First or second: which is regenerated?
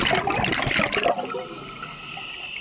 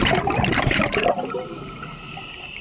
second